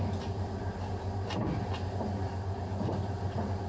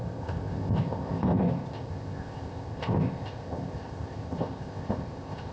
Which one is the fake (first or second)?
second